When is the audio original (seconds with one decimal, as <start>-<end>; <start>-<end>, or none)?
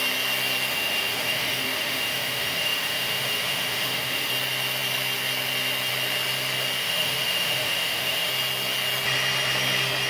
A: 0.0-0.7; 4.3-6.8; 8.3-10.1